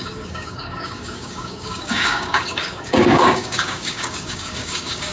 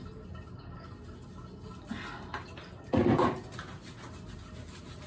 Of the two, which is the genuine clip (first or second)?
second